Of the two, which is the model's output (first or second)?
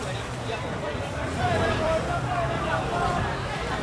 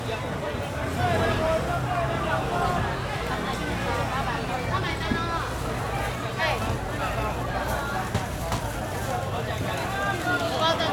first